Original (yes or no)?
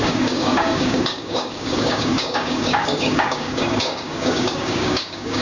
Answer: no